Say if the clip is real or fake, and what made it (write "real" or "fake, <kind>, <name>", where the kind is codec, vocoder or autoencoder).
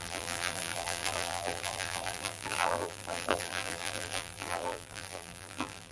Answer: fake, vocoder, BigVGAN v2